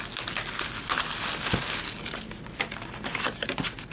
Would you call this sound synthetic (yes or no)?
no